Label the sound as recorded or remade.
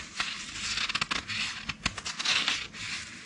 recorded